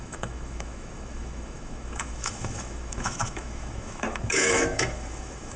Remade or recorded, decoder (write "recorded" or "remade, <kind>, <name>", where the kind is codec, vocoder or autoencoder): remade, autoencoder, DAC-VAE